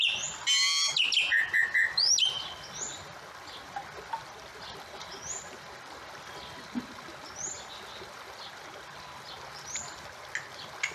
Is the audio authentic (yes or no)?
yes